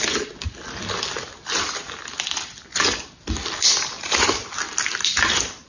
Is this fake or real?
real